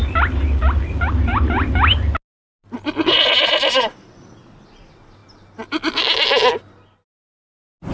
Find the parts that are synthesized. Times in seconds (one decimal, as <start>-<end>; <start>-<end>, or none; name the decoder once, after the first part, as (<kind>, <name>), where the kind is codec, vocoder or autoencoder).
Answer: none